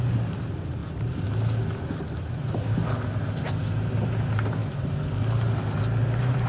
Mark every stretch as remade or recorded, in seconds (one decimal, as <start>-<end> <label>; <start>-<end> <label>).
0.0-6.5 recorded